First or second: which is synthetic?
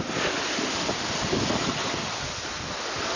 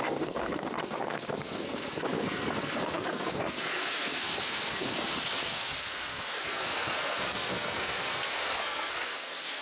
second